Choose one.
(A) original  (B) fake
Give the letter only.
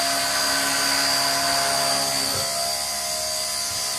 A